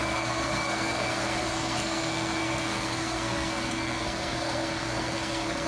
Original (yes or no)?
no